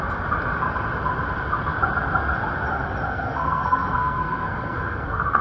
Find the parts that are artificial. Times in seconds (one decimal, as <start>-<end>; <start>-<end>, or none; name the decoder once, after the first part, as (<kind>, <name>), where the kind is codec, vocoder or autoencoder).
3.1-5.4 (codec, SNAC)

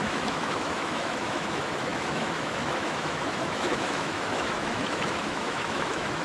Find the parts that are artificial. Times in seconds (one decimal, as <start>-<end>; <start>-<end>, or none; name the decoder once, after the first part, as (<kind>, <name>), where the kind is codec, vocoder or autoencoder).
0.0-6.2 (autoencoder, DAC-VAE)